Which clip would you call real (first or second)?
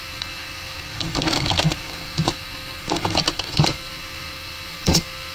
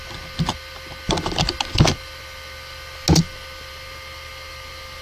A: second